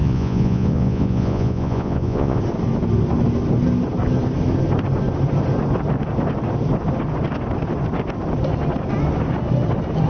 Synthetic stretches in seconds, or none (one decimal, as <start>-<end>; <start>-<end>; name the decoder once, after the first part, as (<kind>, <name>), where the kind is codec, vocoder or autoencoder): 0.0-2.4 (vocoder, Vocos)